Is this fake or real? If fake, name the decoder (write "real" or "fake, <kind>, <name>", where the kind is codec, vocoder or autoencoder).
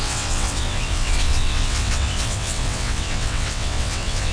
fake, vocoder, WaveNeXt